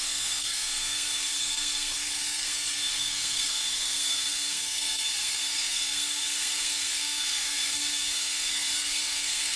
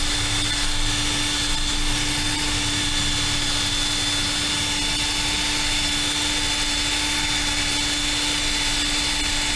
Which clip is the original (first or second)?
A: second